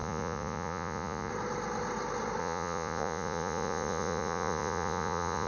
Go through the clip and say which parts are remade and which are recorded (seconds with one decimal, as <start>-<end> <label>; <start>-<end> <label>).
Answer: 0.0-1.3 remade; 1.3-2.4 recorded; 2.4-5.5 remade